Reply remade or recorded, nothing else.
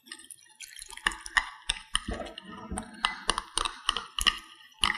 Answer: recorded